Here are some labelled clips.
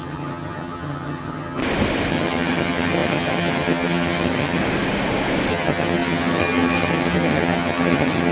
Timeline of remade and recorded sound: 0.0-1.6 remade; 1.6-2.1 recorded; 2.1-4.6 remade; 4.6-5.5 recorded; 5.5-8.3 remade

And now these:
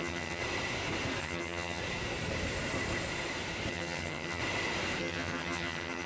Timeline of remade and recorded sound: 0.0-0.4 remade; 0.4-1.2 recorded; 1.2-1.8 remade; 1.8-3.7 recorded; 3.7-4.4 remade; 4.4-5.0 recorded; 5.0-6.1 remade

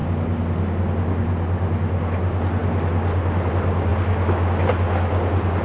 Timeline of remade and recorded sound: 0.0-5.6 recorded